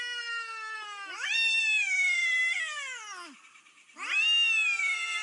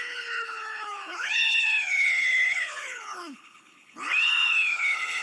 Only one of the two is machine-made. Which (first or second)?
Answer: second